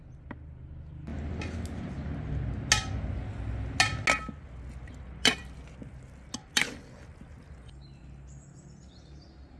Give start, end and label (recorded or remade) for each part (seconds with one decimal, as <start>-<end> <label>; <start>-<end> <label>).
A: 0.0-9.6 recorded